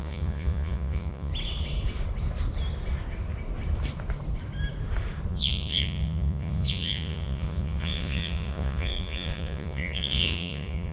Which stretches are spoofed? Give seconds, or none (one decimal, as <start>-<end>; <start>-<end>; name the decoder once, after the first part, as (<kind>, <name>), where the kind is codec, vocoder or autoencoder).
0.0-1.3 (vocoder, Vocos); 5.3-10.9